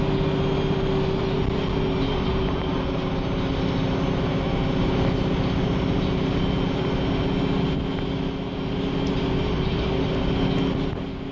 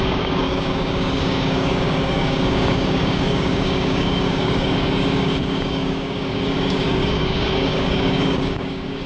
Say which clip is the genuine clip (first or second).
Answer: first